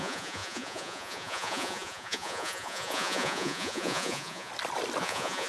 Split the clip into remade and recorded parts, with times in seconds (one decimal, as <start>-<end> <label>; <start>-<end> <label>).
0.0-4.5 remade; 4.5-5.0 recorded; 5.0-5.5 remade